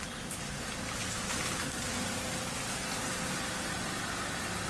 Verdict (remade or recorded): recorded